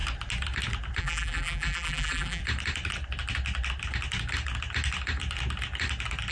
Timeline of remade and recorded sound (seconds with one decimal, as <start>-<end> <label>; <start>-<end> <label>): 0.0-1.0 recorded; 1.0-2.4 remade; 2.4-6.3 recorded